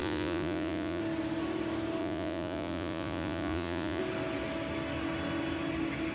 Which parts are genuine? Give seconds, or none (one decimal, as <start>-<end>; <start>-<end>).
1.0-2.0; 4.0-6.1